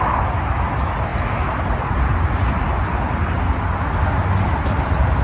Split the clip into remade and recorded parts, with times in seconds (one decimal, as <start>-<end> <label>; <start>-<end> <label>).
0.0-5.2 recorded